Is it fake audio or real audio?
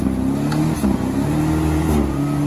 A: real